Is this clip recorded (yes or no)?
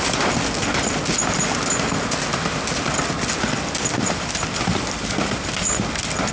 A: yes